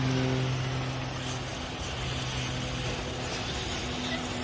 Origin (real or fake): real